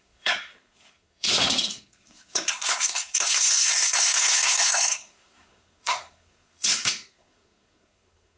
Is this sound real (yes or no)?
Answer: no